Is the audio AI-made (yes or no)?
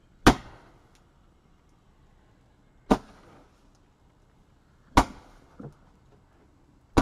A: no